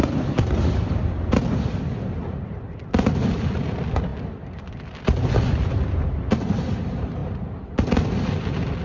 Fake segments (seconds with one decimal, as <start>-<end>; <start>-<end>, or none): none